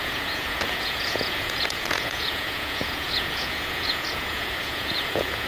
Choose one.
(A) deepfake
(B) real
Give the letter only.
A